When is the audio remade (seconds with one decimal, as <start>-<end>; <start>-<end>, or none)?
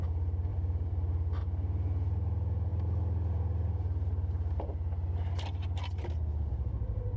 0.5-1.4